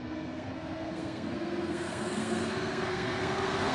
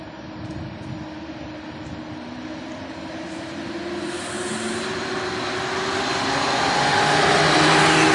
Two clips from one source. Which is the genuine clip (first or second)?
second